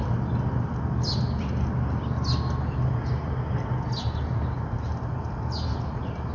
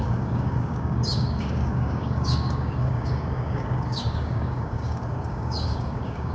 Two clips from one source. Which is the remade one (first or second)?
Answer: second